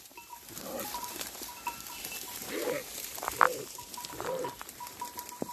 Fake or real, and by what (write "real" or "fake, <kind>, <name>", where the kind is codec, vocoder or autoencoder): fake, vocoder, BigVGAN v2